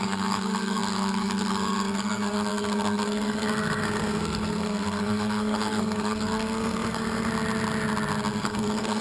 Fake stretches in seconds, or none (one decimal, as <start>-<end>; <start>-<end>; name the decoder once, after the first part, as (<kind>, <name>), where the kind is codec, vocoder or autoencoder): 0.0-7.3 (codec, SNAC); 8.3-9.0